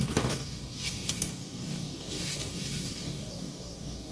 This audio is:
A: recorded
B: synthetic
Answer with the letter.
B